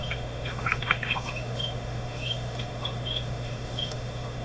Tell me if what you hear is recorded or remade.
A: remade